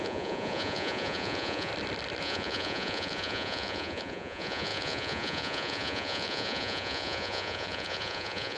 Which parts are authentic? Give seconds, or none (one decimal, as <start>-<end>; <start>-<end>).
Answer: 1.7-2.2